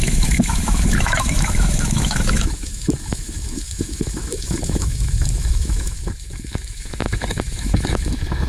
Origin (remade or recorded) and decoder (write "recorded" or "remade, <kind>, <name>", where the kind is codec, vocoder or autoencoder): remade, autoencoder, DAC-VAE